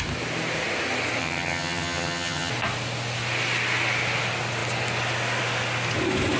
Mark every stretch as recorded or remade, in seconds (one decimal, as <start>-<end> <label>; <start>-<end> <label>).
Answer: 0.0-1.2 recorded; 1.2-2.5 remade; 2.5-6.4 recorded

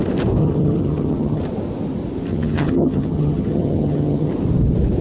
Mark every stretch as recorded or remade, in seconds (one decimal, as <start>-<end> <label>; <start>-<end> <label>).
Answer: 0.0-0.4 recorded; 0.4-1.4 remade; 1.4-2.3 recorded; 2.3-4.3 remade; 4.3-5.0 recorded

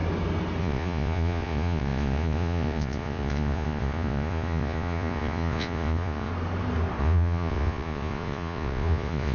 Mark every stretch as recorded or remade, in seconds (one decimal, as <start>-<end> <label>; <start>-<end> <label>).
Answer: 0.0-0.6 recorded; 0.6-6.3 remade; 6.3-7.0 recorded; 7.0-9.3 remade

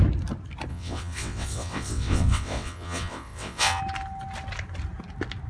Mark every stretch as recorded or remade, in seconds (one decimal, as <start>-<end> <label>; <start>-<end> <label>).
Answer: 0.0-0.7 recorded; 0.7-3.8 remade; 3.8-5.5 recorded

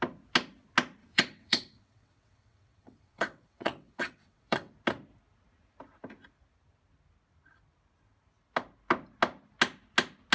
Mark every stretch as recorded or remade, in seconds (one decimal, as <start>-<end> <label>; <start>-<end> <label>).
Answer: 0.0-1.0 recorded; 1.0-4.7 remade; 4.7-10.3 recorded

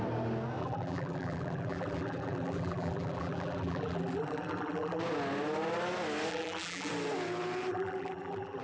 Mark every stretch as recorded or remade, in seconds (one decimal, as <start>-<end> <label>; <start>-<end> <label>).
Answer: 0.0-0.6 recorded; 0.6-5.0 remade; 5.0-6.3 recorded; 6.3-6.9 remade; 6.9-7.7 recorded; 7.7-8.6 remade